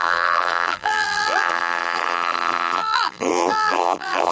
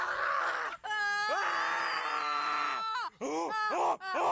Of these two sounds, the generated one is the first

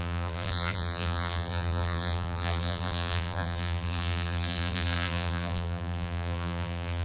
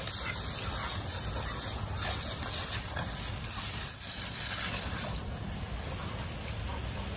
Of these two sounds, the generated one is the first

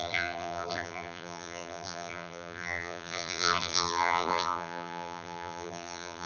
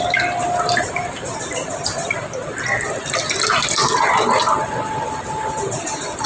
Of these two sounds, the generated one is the first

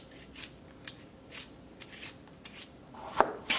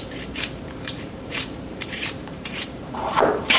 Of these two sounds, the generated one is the second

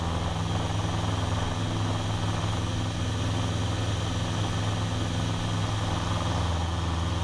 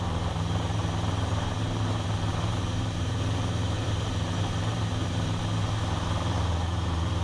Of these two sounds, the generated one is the second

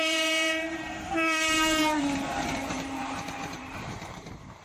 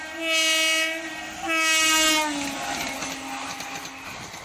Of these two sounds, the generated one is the first